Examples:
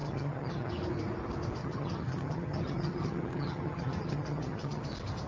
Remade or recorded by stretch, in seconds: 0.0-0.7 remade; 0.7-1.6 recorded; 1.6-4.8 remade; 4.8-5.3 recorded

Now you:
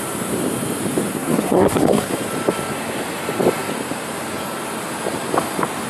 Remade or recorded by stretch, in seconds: 0.0-1.1 recorded; 1.1-2.1 remade; 2.1-5.9 recorded

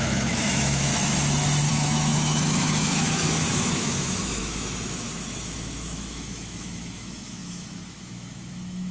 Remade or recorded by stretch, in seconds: 0.0-0.9 remade; 0.9-1.7 recorded; 1.7-8.9 remade

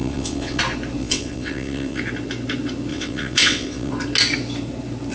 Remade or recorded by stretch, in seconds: 0.0-0.6 remade; 0.6-1.0 recorded; 1.0-2.0 remade; 2.0-2.9 recorded; 2.9-3.9 remade; 3.9-5.1 recorded

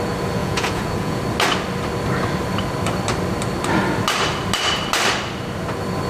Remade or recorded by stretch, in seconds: 0.0-0.4 recorded; 0.4-1.2 remade; 1.2-6.1 recorded

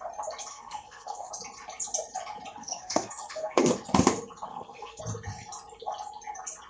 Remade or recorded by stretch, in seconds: 0.0-0.5 recorded; 0.5-1.3 remade; 1.3-2.6 recorded; 2.6-3.6 remade; 3.6-4.5 recorded; 4.5-5.0 remade; 5.0-6.7 recorded

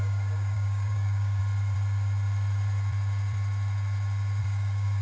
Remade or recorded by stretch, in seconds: 0.0-1.4 remade; 1.4-4.4 recorded; 4.4-5.0 remade